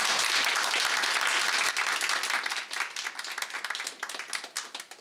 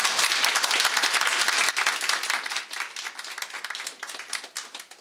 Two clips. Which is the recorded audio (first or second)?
first